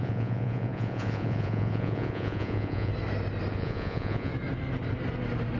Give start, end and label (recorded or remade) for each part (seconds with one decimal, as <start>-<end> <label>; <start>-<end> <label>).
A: 0.0-2.9 remade; 2.9-3.5 recorded; 3.5-4.3 remade; 4.3-5.6 recorded